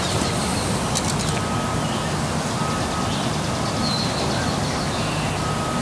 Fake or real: real